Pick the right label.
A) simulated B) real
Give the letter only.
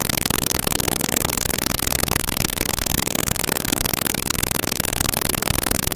A